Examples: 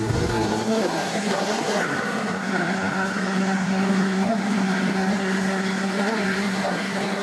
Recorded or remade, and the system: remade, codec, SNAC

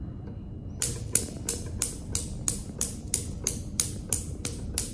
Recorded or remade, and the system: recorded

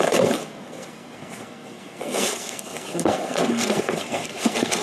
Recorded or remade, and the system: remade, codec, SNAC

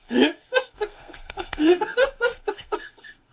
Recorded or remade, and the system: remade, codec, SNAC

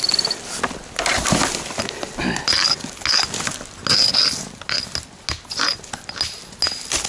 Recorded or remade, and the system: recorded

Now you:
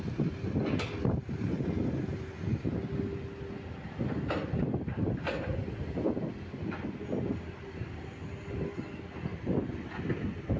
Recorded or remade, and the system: recorded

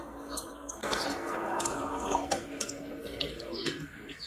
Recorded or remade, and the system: remade, codec, SNAC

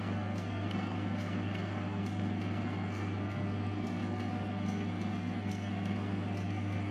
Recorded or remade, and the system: remade, codec, SNAC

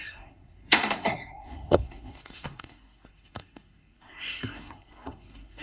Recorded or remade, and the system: remade, codec, SNAC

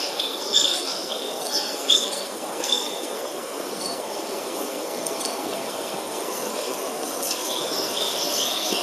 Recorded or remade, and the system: remade, codec, SNAC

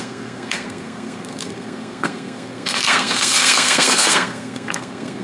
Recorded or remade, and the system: remade, codec, SNAC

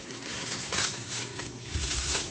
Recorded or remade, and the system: remade, codec, SNAC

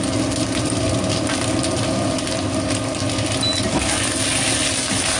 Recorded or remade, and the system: recorded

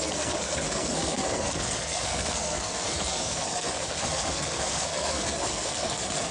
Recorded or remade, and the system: remade, codec, SNAC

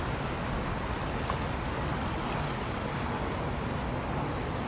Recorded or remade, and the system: recorded